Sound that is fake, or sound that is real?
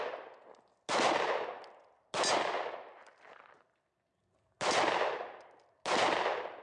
real